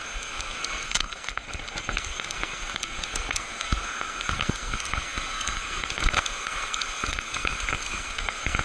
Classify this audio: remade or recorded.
remade